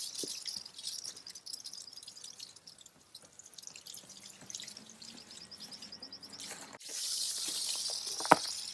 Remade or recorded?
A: recorded